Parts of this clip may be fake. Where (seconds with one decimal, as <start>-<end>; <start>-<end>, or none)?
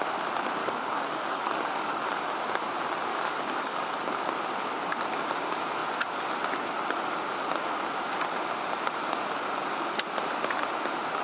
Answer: 0.6-2.2; 3.1-3.9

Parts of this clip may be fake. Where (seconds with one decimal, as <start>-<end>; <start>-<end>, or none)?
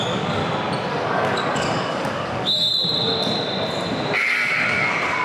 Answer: 0.0-0.4; 0.9-2.7; 4.2-5.2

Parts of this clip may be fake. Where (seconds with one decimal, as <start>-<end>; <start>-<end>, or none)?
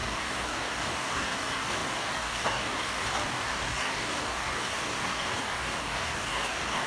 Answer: 0.0-6.9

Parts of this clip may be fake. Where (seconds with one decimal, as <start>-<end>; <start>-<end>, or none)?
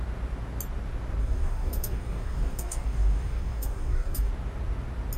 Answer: 1.2-4.3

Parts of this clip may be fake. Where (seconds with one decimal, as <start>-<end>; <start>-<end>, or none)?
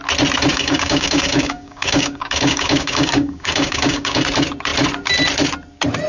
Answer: 0.5-4.2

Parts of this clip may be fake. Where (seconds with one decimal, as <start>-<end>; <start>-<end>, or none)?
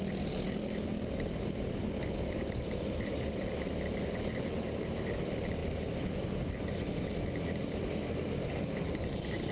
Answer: none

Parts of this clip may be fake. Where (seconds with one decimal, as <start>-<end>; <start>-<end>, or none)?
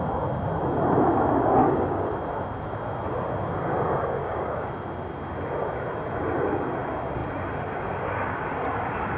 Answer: 1.6-2.1; 4.2-4.7